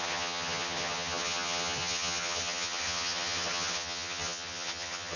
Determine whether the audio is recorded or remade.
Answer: remade